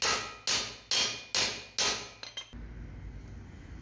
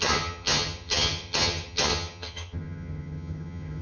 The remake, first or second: second